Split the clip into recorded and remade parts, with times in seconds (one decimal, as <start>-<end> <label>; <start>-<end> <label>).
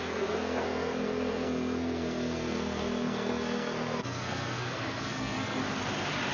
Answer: 0.0-5.6 remade; 5.6-6.3 recorded